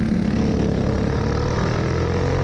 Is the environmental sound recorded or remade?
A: recorded